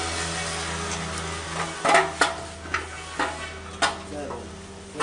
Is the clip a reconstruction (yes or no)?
no